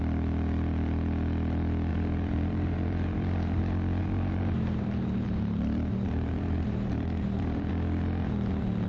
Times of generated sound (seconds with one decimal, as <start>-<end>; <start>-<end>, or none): 1.9-3.6; 4.0-7.7